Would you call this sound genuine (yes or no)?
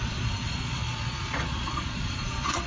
no